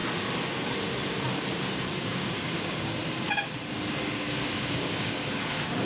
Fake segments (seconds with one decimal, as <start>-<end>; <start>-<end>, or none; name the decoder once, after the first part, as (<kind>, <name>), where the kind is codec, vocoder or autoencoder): 1.9-3.0 (codec, DAC); 3.7-5.9